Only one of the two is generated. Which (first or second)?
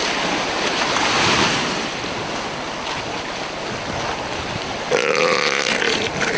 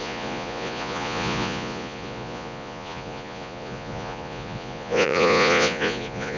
second